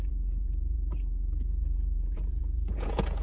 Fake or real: fake